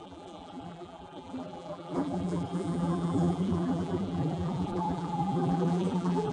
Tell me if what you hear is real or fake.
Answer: fake